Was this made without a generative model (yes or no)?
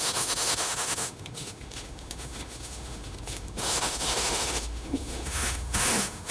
no